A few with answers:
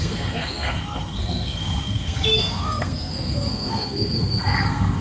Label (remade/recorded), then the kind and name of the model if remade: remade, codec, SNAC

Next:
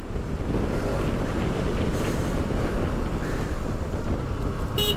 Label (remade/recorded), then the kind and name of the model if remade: recorded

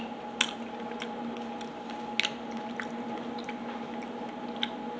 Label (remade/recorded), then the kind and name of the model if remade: recorded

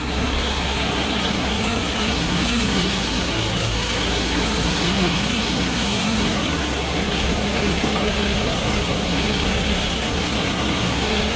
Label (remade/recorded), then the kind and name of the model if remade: remade, codec, SNAC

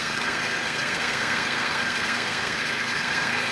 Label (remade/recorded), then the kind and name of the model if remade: remade, codec, SNAC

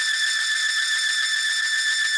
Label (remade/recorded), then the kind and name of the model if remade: recorded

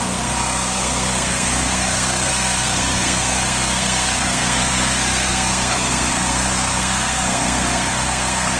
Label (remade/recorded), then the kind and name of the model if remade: remade, codec, SNAC